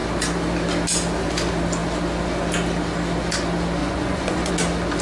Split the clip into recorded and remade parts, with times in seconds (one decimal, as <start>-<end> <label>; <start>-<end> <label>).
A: 0.0-3.8 recorded; 3.8-4.5 remade; 4.5-5.0 recorded